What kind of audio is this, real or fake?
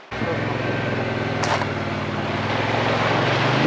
real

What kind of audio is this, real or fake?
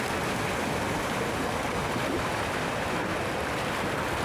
real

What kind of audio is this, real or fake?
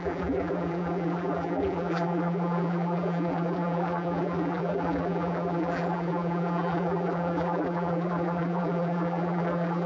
fake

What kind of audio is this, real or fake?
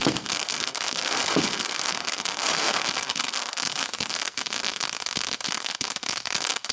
fake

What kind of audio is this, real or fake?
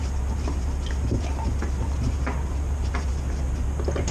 real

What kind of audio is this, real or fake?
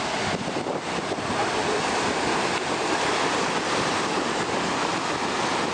real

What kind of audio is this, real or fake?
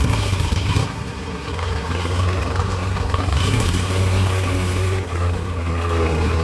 fake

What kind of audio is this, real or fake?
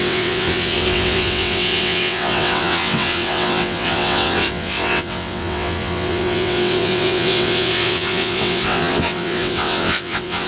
fake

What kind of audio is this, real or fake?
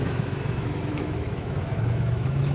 fake